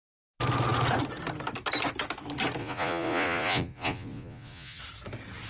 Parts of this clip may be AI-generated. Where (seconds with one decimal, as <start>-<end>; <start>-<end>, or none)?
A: 2.6-4.8